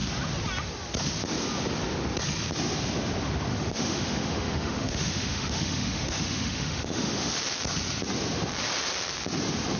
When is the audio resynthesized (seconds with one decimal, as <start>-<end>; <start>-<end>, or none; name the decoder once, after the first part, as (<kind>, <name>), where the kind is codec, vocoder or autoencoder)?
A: 3.5-7.3 (autoencoder, DAC-VAE)